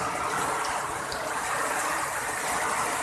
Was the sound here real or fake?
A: real